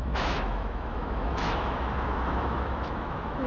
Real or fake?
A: fake